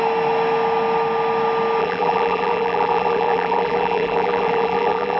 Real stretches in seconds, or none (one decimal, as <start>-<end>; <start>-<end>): 0.0-1.8